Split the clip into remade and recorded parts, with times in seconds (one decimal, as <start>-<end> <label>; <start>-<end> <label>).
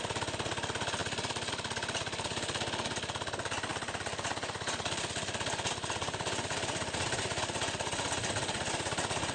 0.0-1.0 recorded; 1.0-1.5 remade; 1.5-3.7 recorded; 3.7-7.4 remade; 7.4-9.3 recorded